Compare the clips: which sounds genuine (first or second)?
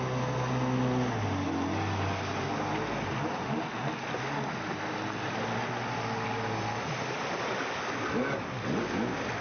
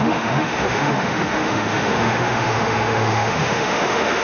first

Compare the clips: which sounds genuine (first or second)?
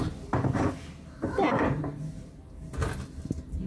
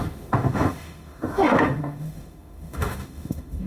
first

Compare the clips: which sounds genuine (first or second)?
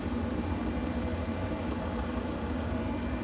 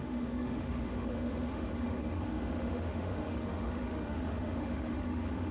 first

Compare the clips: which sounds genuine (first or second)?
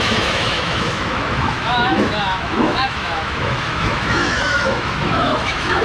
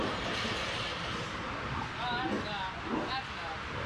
second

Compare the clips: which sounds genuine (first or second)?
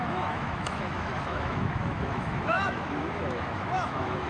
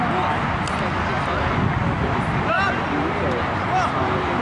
second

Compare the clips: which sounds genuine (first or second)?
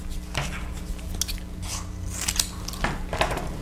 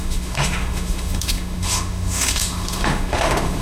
first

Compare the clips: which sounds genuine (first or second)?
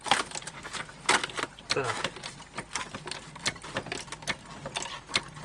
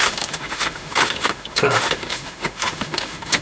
first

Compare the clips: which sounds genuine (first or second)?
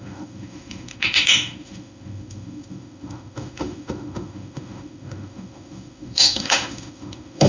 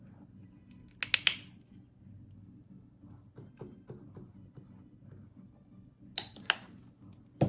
second